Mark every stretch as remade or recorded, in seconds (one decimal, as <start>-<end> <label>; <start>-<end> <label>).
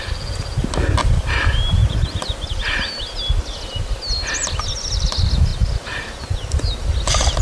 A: 0.0-5.5 recorded; 5.5-6.5 remade; 6.5-7.4 recorded